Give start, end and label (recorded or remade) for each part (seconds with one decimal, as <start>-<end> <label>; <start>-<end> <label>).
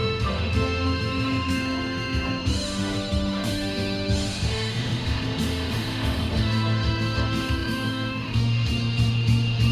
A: 0.0-9.7 remade